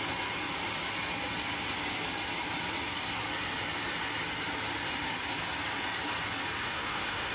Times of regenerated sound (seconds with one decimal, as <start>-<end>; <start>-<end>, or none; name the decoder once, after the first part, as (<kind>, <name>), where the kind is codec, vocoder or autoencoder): 6.6-7.3 (autoencoder, DAC-VAE)